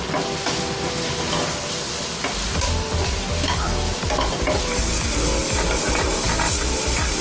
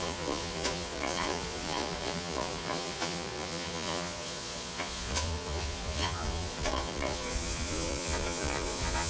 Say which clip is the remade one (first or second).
second